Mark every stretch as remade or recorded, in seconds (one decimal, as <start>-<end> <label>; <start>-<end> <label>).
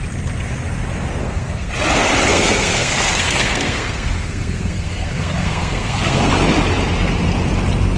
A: 0.0-1.2 recorded; 1.2-1.7 remade; 1.7-2.3 recorded; 2.3-6.3 remade; 6.3-8.0 recorded